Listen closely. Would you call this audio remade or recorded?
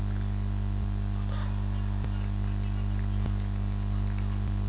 recorded